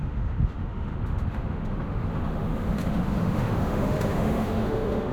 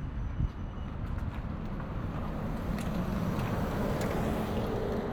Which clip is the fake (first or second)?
first